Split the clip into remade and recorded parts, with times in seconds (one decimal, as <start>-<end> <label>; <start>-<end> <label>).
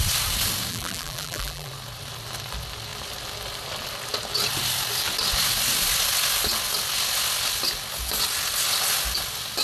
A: 0.0-0.7 recorded; 0.7-1.7 remade; 1.7-9.6 recorded